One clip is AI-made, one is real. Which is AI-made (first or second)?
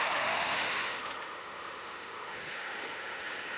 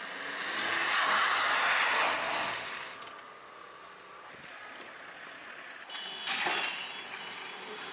first